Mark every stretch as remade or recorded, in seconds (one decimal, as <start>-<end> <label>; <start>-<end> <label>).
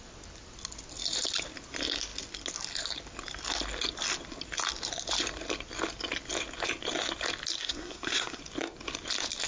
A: 0.0-7.6 recorded; 7.6-8.4 remade; 8.4-9.5 recorded